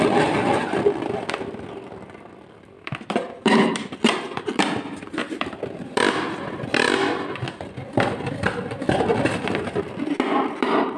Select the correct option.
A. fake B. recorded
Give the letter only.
A